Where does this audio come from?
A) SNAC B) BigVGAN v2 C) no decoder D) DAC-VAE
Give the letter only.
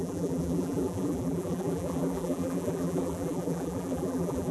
B